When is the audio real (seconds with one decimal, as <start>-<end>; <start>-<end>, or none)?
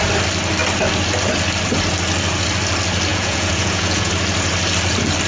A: 0.0-3.1; 4.1-5.3